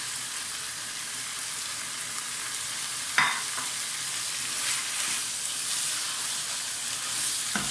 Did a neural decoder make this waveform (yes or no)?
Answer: no